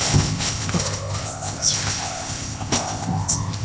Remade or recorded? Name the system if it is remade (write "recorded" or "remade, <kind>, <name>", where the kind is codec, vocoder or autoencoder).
remade, codec, ZipCodec